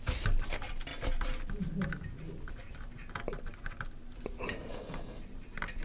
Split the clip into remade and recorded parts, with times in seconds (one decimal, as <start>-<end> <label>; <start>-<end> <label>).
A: 0.0-4.7 recorded; 4.7-5.2 remade; 5.2-5.8 recorded